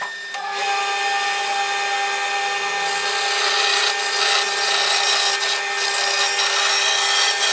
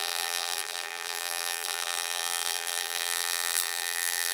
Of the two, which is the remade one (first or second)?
second